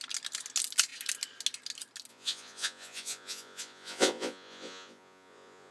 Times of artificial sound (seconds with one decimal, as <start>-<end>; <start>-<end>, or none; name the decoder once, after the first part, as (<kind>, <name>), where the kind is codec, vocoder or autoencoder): 2.1-5.7 (vocoder, Vocos)